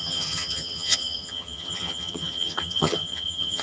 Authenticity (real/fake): fake